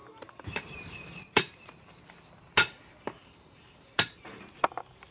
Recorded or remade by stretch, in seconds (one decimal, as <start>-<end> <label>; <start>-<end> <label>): 0.0-2.0 remade; 2.0-3.2 recorded; 3.2-5.1 remade